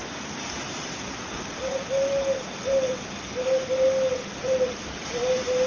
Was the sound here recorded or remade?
recorded